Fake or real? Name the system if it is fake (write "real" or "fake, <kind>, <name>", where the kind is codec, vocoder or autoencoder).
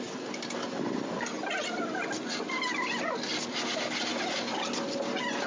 real